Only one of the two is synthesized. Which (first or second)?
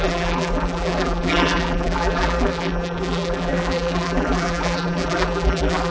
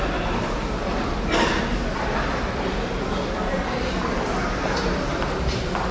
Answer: first